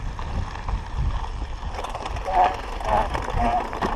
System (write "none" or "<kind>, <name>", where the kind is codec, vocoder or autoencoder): none